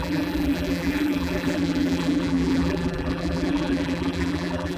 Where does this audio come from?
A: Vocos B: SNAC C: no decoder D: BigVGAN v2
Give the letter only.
D